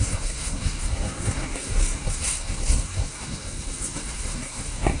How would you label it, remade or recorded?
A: remade